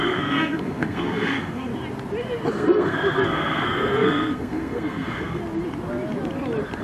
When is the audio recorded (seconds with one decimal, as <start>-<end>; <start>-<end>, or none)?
1.7-2.5; 5.4-6.8